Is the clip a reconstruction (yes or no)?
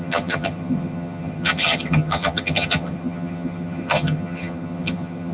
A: yes